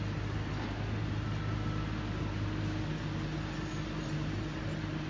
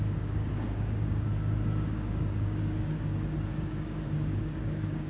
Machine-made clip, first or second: second